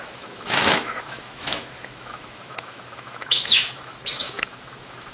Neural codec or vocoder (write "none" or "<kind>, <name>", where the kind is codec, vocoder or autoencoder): autoencoder, DAC-VAE